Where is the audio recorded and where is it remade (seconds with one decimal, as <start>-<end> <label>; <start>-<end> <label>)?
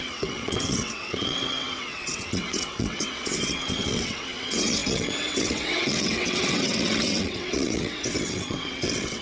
0.0-9.2 remade